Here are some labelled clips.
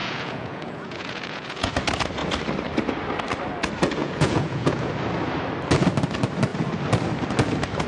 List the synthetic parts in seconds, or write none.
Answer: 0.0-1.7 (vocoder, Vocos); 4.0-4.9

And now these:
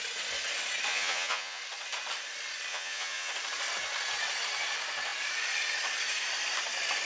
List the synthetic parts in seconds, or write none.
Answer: 0.9-1.6 (vocoder, Vocos); 2.7-3.3

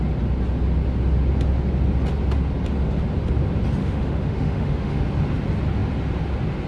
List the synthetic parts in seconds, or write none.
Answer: 3.8-5.0 (autoencoder, DAC-VAE)

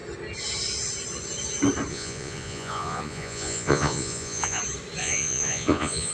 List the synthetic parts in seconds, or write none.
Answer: 1.9-4.6 (vocoder, Vocos); 5.0-6.1

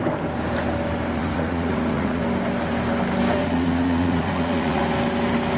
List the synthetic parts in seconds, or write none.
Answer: 1.2-2.2 (vocoder, Vocos); 3.4-4.8

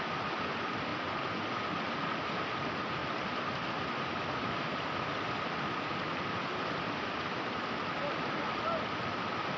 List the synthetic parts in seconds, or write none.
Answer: none